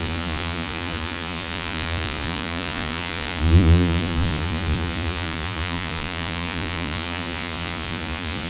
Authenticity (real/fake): fake